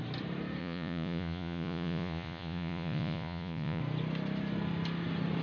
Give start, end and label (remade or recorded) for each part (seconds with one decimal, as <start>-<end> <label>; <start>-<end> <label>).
0.0-0.6 recorded; 0.6-3.8 remade; 3.8-5.4 recorded